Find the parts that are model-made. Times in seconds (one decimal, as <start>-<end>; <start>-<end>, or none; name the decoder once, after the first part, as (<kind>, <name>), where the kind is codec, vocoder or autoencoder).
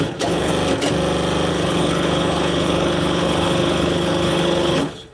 0.0-0.5 (codec, HILCodec); 1.5-5.1